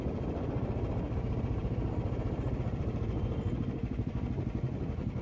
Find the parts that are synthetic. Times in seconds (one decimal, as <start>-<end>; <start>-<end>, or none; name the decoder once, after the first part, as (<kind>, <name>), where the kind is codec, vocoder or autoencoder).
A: 1.6-4.3 (vocoder, BigVGAN v2)